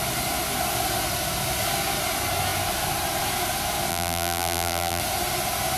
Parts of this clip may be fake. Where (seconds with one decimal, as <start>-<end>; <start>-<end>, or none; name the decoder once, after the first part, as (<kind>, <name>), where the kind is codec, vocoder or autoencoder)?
3.9-5.0 (vocoder, BigVGAN v2)